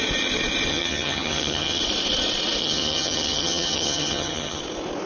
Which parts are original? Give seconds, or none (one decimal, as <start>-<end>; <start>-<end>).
0.0-0.7; 1.8-2.6; 4.6-5.1